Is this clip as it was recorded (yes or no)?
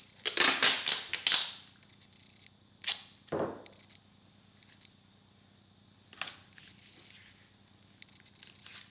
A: yes